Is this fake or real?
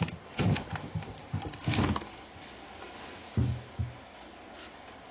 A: real